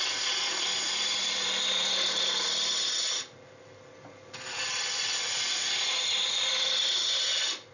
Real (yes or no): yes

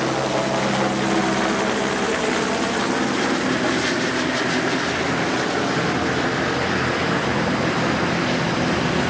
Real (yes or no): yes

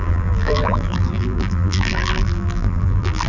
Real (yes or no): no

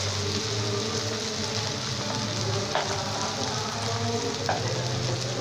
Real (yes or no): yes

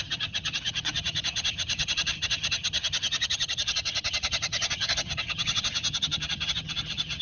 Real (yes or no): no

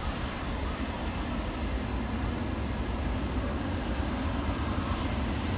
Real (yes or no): yes